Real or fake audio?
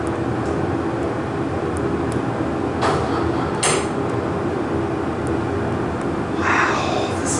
real